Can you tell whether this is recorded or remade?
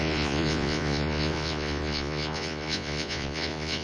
remade